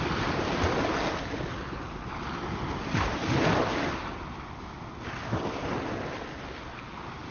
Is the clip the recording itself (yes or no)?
yes